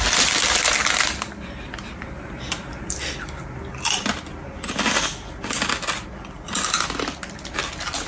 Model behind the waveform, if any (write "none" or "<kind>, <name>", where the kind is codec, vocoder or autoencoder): none